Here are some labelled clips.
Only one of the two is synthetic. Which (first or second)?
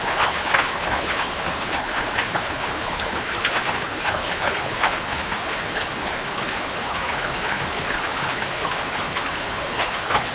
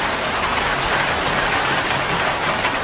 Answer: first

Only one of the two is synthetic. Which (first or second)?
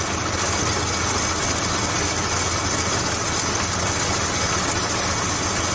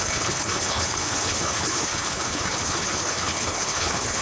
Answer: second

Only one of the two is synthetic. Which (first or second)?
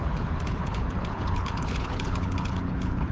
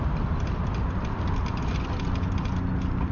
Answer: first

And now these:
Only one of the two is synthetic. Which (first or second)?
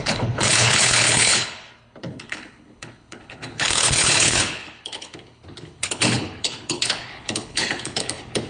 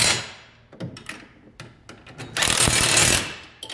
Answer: first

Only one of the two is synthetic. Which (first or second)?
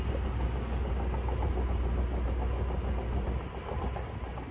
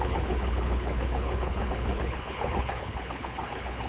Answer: second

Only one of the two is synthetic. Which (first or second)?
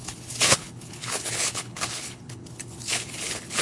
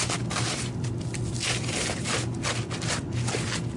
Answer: first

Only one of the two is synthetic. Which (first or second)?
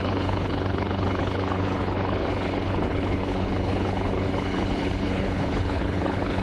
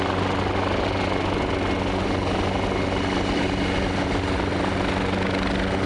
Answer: first